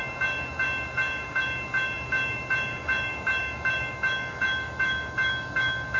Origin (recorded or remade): remade